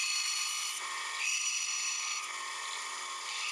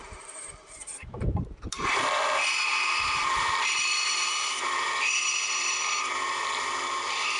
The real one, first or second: first